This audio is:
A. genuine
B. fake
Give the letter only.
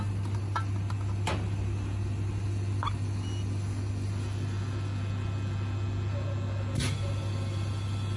A